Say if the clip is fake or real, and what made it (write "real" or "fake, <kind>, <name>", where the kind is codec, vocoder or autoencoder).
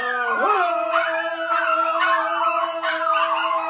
real